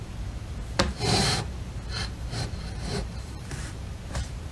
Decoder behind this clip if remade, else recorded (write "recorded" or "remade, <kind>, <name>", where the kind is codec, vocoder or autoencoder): remade, vocoder, BigVGAN v2